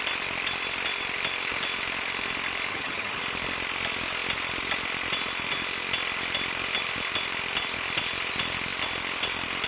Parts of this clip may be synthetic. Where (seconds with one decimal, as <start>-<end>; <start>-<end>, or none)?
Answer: 2.7-3.2